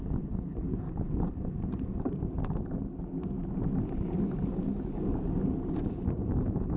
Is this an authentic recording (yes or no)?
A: yes